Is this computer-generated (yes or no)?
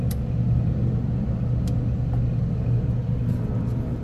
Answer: no